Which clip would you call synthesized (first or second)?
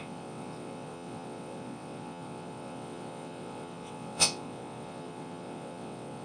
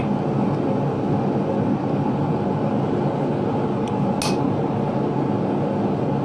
first